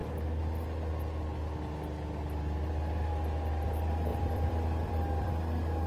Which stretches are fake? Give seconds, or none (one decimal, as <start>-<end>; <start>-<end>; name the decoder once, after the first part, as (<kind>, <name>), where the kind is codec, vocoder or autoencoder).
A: 4.1-5.3 (vocoder, BigVGAN v2)